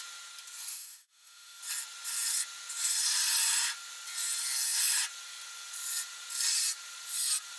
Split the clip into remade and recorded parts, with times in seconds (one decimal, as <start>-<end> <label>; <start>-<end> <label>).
0.0-0.7 recorded; 0.7-1.6 remade; 1.6-7.6 recorded